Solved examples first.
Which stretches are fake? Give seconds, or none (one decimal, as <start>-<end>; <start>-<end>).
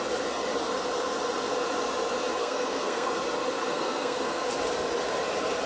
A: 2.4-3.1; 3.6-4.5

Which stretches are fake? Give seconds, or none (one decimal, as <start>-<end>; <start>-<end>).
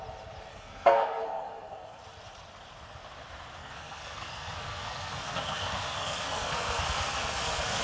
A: 0.5-2.0; 3.6-7.8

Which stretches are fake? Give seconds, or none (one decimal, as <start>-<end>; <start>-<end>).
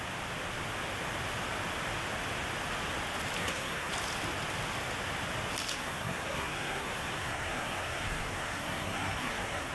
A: 3.4-3.9; 5.7-9.7